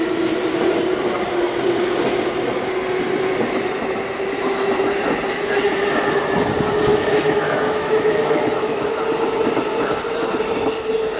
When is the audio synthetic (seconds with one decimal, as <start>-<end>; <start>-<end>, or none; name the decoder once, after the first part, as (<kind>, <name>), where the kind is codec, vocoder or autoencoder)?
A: 6.9-9.0 (autoencoder, DAC-VAE)